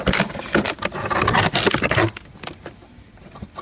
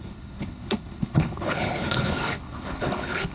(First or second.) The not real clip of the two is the second